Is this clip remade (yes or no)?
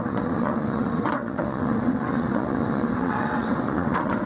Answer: yes